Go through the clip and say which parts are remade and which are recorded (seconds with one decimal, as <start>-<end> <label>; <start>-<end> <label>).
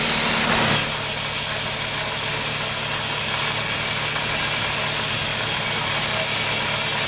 0.0-7.1 recorded